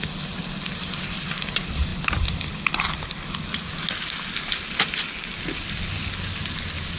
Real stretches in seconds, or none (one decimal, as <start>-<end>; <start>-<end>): 0.0-7.0